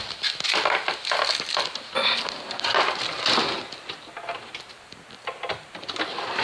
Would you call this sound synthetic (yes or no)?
no